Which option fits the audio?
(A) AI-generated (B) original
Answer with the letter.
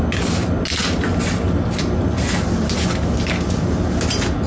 B